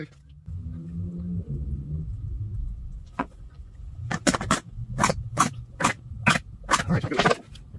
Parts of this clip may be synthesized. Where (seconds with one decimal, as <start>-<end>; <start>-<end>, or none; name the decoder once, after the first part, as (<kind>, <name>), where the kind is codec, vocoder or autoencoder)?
2.6-5.8 (vocoder, Vocos)